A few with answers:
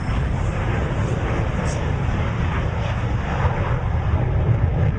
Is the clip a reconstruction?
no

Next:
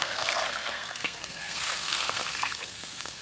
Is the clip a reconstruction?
yes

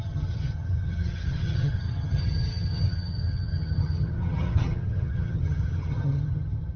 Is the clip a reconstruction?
yes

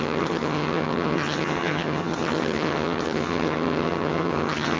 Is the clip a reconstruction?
yes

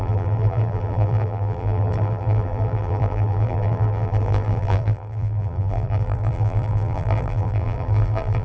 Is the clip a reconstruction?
yes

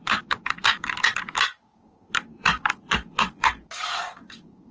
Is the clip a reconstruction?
yes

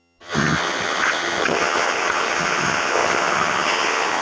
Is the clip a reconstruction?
yes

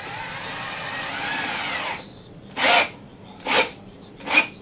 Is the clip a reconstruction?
no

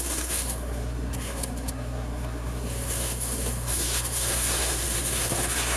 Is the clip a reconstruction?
yes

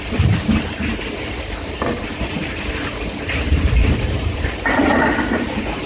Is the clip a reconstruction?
yes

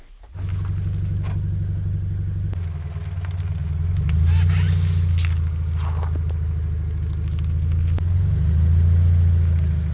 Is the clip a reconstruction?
no